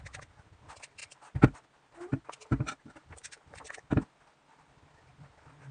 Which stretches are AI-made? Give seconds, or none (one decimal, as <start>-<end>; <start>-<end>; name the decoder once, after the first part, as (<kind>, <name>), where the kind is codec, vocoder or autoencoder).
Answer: none